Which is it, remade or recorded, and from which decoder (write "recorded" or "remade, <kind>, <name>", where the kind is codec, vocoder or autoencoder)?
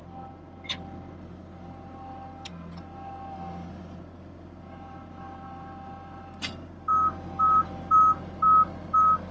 recorded